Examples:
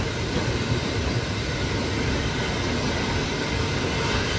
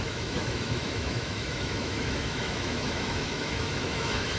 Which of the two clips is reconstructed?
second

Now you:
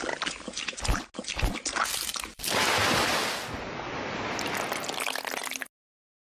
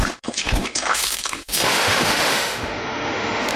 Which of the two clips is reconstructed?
second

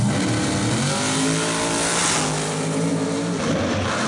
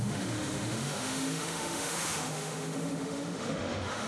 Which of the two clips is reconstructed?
second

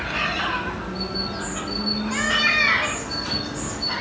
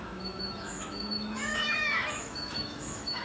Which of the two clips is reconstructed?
second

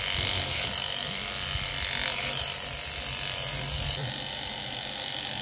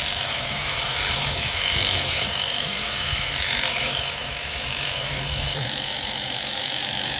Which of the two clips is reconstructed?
second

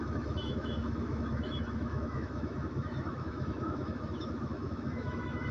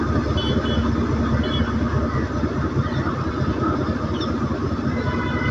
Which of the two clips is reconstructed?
first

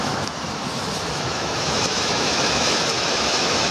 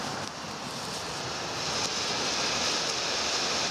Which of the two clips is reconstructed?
first